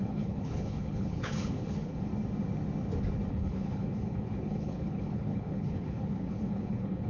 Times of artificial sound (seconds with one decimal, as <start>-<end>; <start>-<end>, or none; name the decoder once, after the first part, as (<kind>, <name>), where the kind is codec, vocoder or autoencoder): 0.0-2.1 (codec, HILCodec); 3.3-7.1